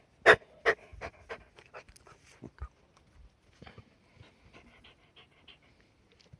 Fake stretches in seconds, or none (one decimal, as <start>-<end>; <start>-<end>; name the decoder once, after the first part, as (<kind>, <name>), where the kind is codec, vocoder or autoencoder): none